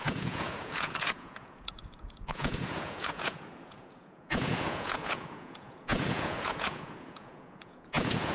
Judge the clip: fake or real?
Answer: fake